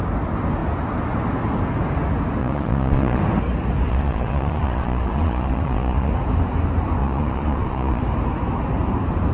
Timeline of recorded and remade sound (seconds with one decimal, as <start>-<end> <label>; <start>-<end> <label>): 0.0-2.4 recorded; 2.4-3.2 remade; 3.2-3.9 recorded; 3.9-6.1 remade; 6.1-7.0 recorded; 7.0-8.0 remade; 8.0-9.3 recorded